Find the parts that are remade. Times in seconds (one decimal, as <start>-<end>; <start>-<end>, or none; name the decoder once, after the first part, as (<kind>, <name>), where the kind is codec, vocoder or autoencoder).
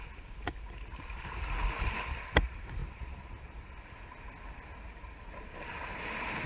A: none